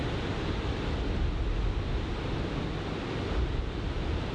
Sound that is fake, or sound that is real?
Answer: real